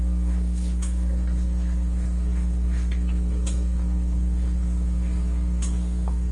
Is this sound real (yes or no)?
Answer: no